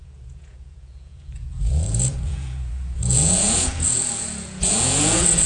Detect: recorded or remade remade